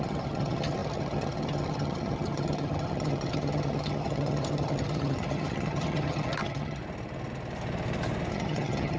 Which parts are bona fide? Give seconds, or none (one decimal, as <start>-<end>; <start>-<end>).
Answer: 6.8-8.3

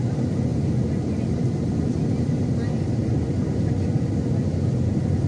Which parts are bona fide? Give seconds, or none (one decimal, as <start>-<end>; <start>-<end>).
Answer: 0.0-5.3

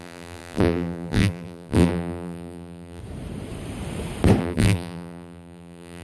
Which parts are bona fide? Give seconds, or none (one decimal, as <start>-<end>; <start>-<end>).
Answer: 3.0-4.4

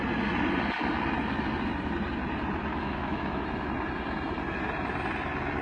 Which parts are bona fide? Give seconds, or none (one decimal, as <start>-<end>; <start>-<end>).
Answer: 0.0-2.7; 3.4-5.6

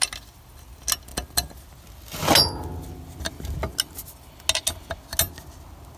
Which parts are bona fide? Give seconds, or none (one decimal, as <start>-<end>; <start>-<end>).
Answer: 0.0-6.0

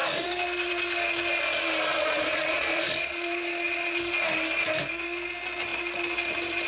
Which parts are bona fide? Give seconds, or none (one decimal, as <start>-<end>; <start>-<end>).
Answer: 0.0-1.9; 4.0-6.7

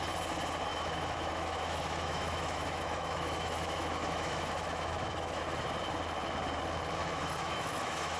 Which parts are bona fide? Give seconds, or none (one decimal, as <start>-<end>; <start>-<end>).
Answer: 0.0-0.7; 5.4-7.0